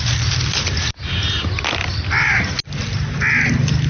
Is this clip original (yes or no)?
yes